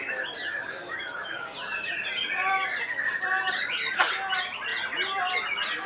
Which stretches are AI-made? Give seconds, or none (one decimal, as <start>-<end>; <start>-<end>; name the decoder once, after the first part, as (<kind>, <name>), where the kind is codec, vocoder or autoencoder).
0.4-1.4 (autoencoder, DAC-VAE)